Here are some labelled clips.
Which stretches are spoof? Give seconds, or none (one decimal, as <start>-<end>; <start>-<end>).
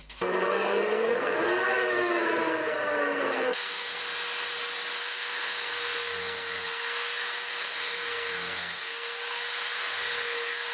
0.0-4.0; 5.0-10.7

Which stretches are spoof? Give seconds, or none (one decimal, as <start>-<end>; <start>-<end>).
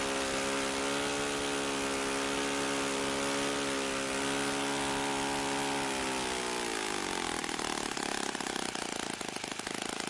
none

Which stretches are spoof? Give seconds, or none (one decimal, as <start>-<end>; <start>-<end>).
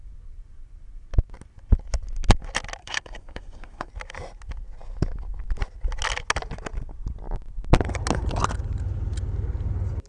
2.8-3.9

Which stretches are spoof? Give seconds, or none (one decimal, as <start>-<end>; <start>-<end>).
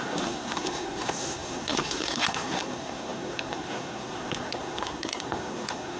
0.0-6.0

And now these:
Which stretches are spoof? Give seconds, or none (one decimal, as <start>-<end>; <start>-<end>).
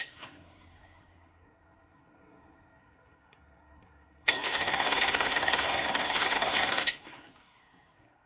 0.0-8.3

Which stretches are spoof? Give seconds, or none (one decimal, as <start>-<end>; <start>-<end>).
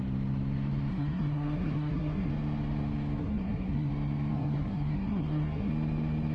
0.9-2.3; 3.2-3.9; 4.3-5.7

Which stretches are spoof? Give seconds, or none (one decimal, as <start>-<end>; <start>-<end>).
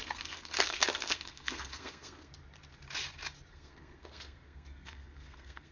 0.0-2.3; 3.5-5.7